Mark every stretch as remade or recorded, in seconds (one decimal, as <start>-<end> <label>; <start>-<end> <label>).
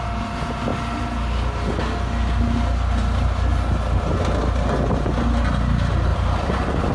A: 0.0-6.1 recorded; 6.1-6.9 remade